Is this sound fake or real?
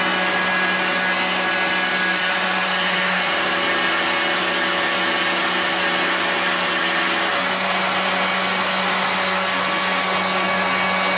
real